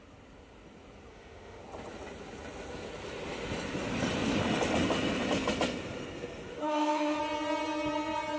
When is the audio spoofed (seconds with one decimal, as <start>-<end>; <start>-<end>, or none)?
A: 1.1-1.6; 6.6-7.2